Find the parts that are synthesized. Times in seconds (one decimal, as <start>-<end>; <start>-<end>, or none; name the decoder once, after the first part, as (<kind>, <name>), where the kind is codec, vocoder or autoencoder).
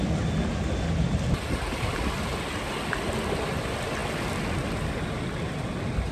none